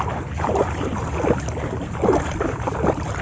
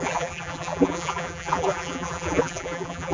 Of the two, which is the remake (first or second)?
second